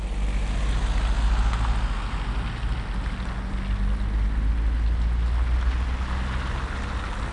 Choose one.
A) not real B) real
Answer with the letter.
B